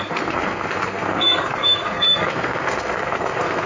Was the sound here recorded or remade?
remade